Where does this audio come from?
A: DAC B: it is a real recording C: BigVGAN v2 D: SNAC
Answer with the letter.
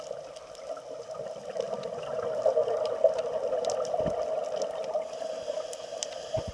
B